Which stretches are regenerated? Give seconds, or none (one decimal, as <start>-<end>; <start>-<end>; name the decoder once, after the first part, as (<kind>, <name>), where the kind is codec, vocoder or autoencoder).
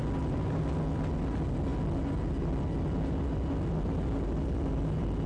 none